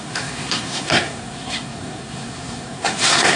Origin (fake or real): fake